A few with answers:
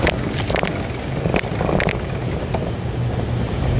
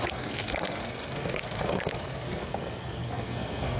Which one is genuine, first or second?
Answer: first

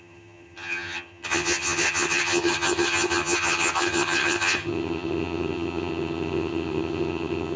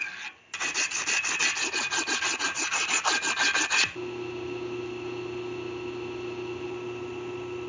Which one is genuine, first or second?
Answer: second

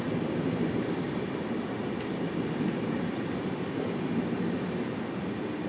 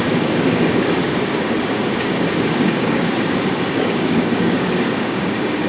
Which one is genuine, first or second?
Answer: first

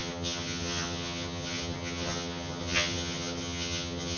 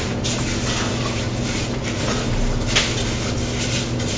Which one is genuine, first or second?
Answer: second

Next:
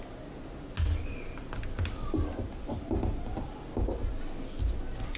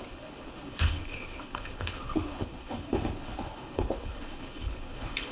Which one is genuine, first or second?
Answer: first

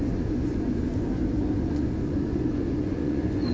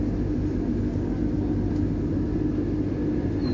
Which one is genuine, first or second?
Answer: second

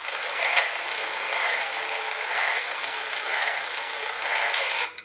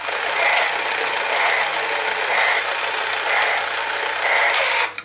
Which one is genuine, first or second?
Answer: second